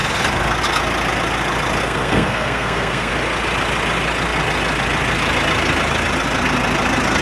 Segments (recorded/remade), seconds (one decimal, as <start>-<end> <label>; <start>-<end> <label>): 0.0-1.8 recorded; 1.8-3.1 remade; 3.1-7.2 recorded